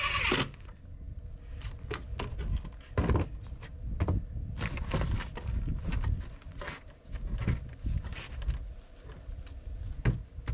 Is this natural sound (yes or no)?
yes